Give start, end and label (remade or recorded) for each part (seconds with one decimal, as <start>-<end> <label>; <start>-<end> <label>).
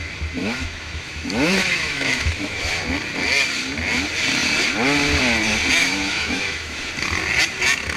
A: 0.0-0.4 recorded; 0.4-2.8 remade; 2.8-5.8 recorded; 5.8-6.9 remade; 6.9-8.0 recorded